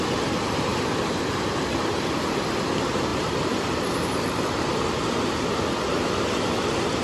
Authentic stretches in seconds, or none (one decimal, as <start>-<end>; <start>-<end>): 0.0-7.0